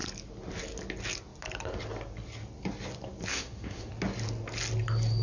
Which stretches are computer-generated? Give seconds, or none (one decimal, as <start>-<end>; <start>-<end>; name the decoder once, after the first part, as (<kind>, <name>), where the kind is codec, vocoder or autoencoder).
3.3-3.9 (autoencoder, DAC-VAE)